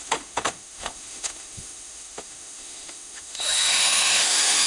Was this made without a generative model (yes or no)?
no